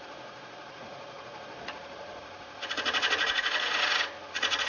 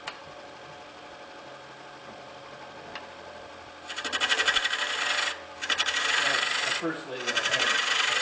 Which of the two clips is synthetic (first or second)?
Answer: first